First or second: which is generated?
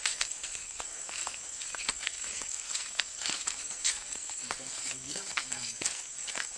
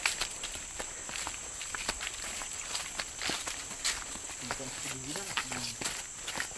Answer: first